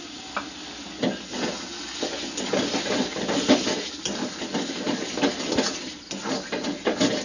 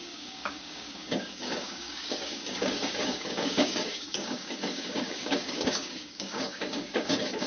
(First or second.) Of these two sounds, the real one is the first